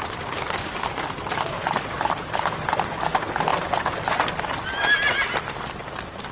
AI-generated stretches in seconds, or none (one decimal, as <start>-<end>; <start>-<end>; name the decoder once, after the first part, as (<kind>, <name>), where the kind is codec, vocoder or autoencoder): none